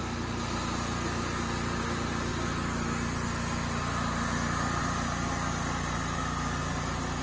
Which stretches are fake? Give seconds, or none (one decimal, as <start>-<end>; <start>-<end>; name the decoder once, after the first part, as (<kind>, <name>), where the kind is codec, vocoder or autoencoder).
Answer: none